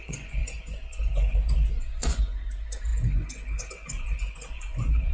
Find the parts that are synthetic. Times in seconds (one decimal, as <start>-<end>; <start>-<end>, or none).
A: 0.0-5.1